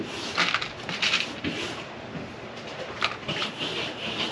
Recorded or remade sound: remade